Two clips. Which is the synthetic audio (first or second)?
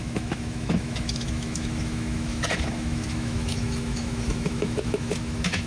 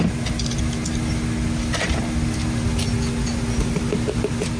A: first